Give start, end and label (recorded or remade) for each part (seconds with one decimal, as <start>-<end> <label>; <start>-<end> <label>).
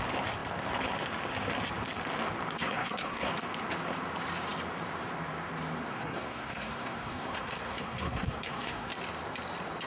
0.0-2.6 recorded; 2.6-3.3 remade; 3.3-5.9 recorded; 5.9-8.9 remade; 8.9-9.9 recorded